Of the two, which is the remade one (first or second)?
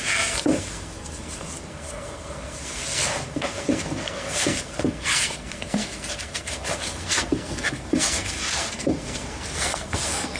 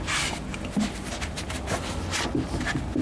first